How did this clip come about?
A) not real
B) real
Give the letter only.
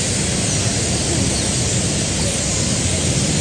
B